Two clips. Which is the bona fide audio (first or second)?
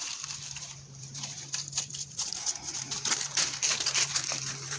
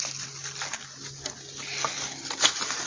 second